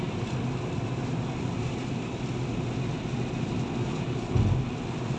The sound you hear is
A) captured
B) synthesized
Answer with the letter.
A